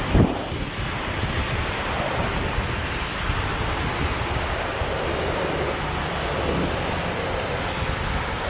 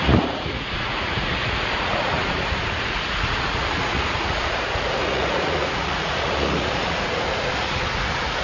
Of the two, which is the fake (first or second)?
second